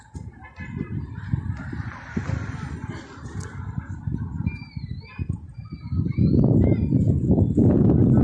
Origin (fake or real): real